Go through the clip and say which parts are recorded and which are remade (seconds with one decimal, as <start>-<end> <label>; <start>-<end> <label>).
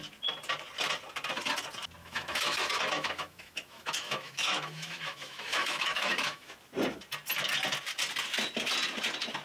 0.0-2.0 recorded; 2.0-6.5 remade; 6.5-9.4 recorded